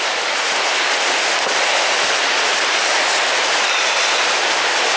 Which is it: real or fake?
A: real